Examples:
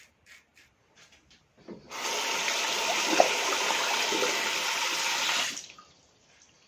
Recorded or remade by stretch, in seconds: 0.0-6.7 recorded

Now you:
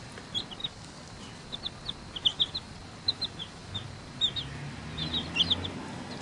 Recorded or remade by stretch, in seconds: 0.0-0.6 recorded; 0.6-1.1 remade; 1.1-6.2 recorded

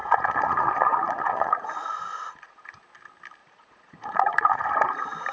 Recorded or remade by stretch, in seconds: 0.0-2.7 remade; 2.7-3.4 recorded; 3.4-4.6 remade; 4.6-5.3 recorded